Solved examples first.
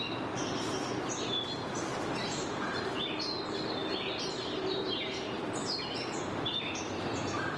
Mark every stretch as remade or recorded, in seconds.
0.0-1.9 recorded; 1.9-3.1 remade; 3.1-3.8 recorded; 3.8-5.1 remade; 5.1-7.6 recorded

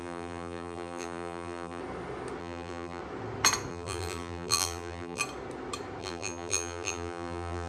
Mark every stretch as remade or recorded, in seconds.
0.0-1.8 remade; 1.8-2.4 recorded; 2.4-3.0 remade; 3.0-3.7 recorded; 3.7-5.2 remade; 5.2-6.0 recorded; 6.0-7.7 remade

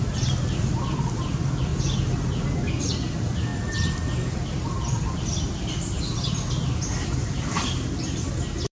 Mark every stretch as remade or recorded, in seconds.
0.0-1.7 remade; 1.7-2.8 recorded; 2.8-8.7 remade